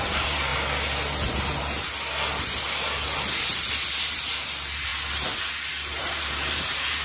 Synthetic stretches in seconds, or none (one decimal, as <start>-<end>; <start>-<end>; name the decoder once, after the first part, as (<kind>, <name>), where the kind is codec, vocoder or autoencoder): 0.0-0.5 (vocoder, BigVGAN v2); 3.9-4.9; 6.0-7.0